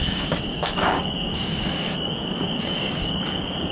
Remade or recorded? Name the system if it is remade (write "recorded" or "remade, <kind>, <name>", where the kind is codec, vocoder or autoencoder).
remade, codec, DAC